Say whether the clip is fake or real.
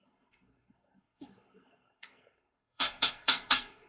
fake